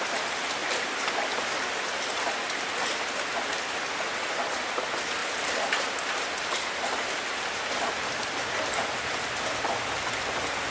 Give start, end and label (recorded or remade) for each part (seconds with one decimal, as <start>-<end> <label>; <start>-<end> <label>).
0.0-0.6 recorded; 0.6-1.1 remade; 1.1-5.2 recorded; 5.2-5.8 remade; 5.8-10.7 recorded